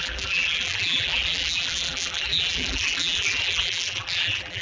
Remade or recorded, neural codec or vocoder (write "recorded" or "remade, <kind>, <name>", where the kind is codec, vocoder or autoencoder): remade, vocoder, BigVGAN v2